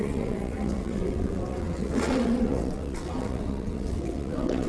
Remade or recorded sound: remade